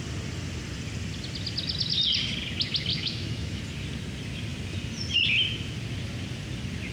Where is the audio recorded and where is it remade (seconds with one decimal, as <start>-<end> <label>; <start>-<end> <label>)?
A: 0.0-2.9 recorded; 2.9-3.6 remade; 3.6-6.9 recorded